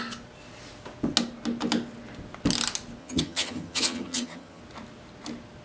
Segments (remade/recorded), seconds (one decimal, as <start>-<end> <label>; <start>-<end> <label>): 0.0-3.0 recorded; 3.0-4.6 remade; 4.6-5.6 recorded